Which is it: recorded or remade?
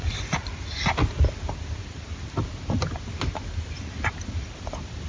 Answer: recorded